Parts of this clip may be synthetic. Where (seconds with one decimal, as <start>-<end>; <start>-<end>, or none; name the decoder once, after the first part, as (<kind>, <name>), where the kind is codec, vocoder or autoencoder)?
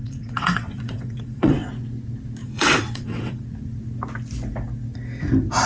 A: 0.0-1.7 (vocoder, WaveNeXt); 2.4-3.4